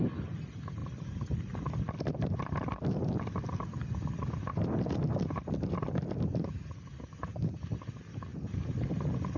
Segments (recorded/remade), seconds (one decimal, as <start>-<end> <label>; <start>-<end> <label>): 0.0-9.4 recorded